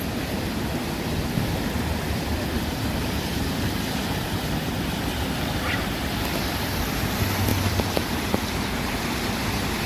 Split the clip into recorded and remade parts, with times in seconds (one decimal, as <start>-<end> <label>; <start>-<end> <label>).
0.0-3.3 remade; 3.3-4.2 recorded; 4.2-9.9 remade